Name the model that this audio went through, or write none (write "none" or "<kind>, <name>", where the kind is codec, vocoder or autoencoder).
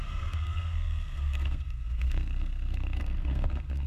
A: codec, SNAC